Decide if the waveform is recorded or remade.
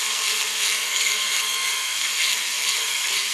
remade